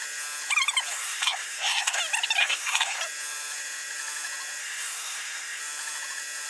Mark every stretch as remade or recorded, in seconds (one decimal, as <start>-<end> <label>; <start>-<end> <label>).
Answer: 0.0-0.9 recorded; 0.9-2.0 remade; 2.0-2.4 recorded; 2.4-3.0 remade; 3.0-4.6 recorded; 4.6-5.6 remade; 5.6-6.5 recorded